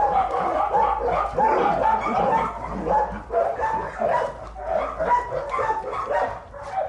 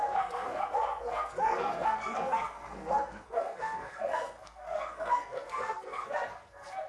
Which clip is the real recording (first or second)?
first